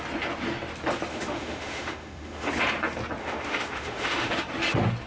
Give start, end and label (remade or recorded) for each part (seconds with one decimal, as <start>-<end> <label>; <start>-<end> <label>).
0.0-1.1 recorded; 1.1-2.5 remade; 2.5-3.2 recorded; 3.2-4.3 remade; 4.3-5.1 recorded